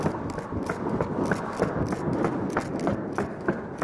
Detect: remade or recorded remade